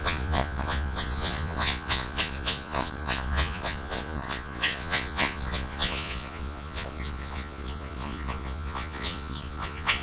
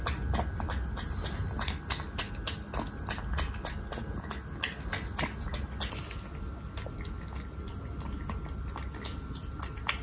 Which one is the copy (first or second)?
first